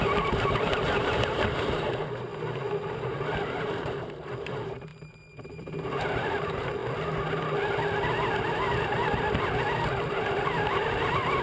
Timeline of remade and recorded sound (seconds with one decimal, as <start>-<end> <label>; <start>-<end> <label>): 0.0-2.3 remade; 2.3-3.0 recorded; 3.0-6.8 remade; 6.8-8.3 recorded; 8.3-11.4 remade